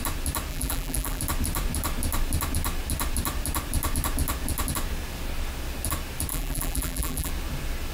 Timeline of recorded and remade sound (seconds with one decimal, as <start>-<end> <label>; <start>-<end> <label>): 0.0-0.5 recorded; 0.5-1.2 remade; 1.2-6.3 recorded; 6.3-7.3 remade; 7.3-7.9 recorded